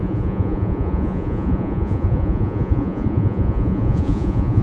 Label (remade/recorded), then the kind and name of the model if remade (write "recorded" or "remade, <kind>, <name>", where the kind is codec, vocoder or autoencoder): remade, vocoder, Vocos